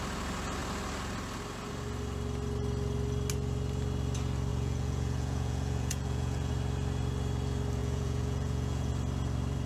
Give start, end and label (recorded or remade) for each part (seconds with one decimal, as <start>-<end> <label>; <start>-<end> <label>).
0.0-4.5 recorded; 4.5-6.5 remade; 6.5-7.8 recorded; 7.8-8.9 remade; 8.9-9.7 recorded